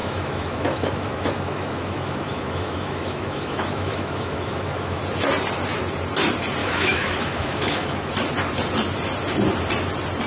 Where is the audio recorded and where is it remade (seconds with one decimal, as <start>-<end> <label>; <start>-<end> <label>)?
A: 0.0-5.0 remade; 5.0-6.6 recorded; 6.6-8.1 remade; 8.1-10.3 recorded